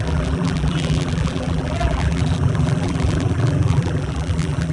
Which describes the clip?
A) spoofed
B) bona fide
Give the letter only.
A